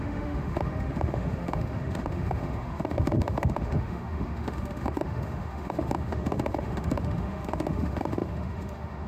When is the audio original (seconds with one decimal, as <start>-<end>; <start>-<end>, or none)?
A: none